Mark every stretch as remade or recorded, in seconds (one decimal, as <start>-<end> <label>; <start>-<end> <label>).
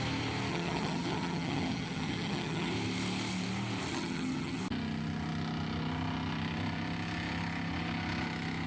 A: 0.0-0.5 recorded; 0.5-2.7 remade; 2.7-3.9 recorded; 3.9-4.6 remade; 4.6-8.7 recorded